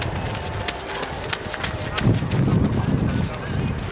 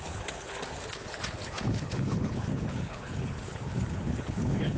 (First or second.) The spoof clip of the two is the second